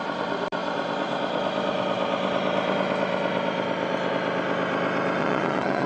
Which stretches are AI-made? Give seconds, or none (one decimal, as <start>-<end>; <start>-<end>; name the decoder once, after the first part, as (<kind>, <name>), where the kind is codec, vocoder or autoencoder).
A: 5.2-5.9 (vocoder, WaveNeXt)